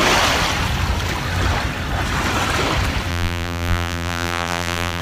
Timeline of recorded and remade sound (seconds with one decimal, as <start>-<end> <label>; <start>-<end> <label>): 0.0-3.1 recorded; 3.1-5.0 remade